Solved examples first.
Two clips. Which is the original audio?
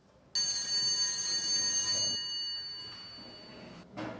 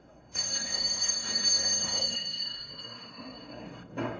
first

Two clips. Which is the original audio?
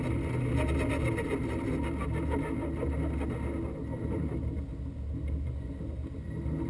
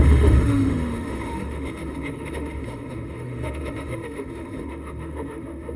first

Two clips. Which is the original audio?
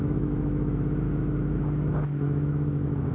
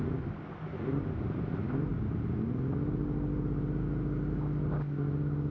second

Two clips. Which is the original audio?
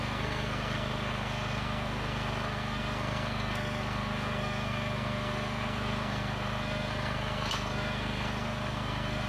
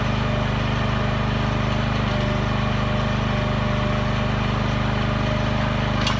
second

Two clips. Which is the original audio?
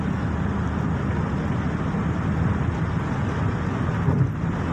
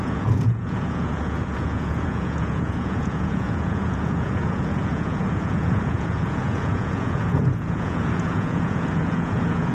first